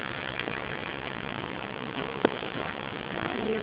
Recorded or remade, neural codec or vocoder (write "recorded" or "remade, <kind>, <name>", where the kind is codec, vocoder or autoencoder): remade, vocoder, WaveNeXt